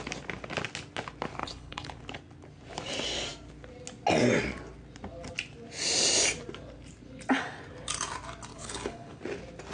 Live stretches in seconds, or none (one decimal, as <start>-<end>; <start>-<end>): 0.0-1.4; 1.9-8.5; 9.2-9.7